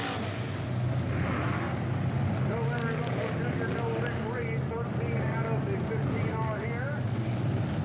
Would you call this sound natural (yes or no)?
yes